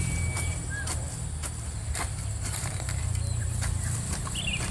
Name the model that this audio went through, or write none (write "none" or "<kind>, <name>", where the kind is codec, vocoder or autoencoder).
none